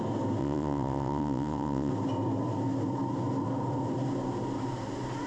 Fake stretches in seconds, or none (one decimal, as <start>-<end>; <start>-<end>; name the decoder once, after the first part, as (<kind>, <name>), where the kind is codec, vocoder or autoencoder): 0.4-1.9 (vocoder, WaveNeXt)